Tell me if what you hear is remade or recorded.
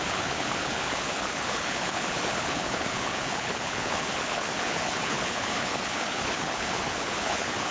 remade